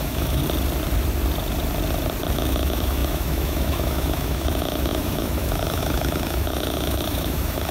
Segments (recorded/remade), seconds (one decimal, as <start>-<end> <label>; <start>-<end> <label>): 0.0-0.4 remade; 0.4-2.3 recorded; 2.3-7.7 remade